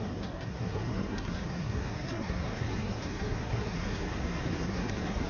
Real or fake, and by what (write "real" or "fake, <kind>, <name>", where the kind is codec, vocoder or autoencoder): fake, codec, SNAC